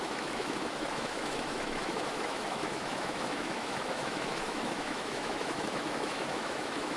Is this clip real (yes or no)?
no